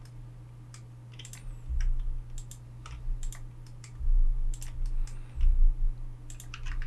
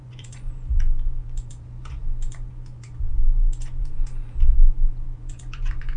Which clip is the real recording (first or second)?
first